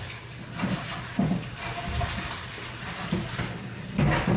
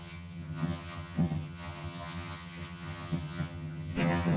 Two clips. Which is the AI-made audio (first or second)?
second